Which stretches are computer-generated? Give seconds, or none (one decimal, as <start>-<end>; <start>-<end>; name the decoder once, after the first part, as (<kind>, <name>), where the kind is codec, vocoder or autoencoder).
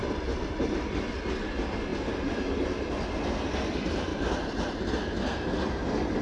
none